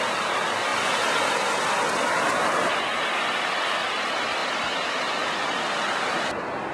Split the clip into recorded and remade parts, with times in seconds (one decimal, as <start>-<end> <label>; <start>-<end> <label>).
0.0-6.7 recorded